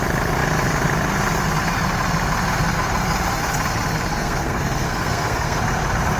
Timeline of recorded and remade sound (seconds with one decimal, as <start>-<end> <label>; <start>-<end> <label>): 0.0-4.1 recorded; 4.1-5.6 remade; 5.6-6.2 recorded